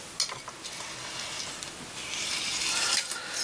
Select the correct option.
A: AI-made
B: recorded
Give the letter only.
B